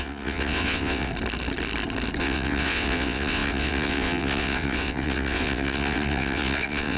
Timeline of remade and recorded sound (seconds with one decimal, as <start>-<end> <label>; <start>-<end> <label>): 0.0-1.1 remade; 1.1-2.2 recorded; 2.2-7.0 remade